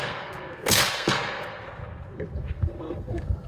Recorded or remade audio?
remade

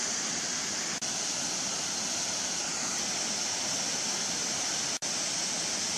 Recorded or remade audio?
recorded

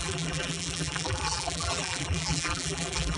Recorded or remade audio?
remade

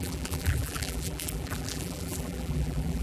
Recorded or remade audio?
remade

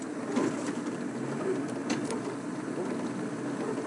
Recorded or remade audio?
recorded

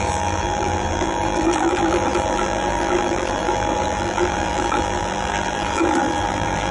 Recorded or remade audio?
remade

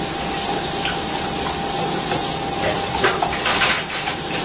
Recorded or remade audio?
recorded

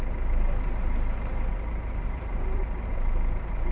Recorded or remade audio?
remade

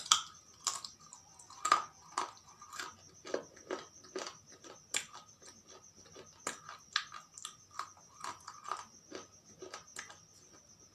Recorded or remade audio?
recorded